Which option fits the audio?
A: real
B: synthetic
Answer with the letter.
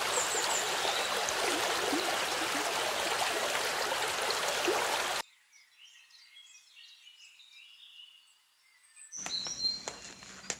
A